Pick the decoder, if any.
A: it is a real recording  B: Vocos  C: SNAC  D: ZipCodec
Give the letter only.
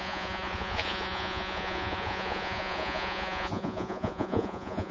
B